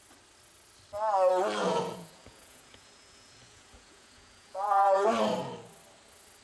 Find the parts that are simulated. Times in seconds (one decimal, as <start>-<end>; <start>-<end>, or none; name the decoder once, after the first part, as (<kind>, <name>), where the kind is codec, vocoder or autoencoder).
1.6-5.1 (vocoder, Vocos)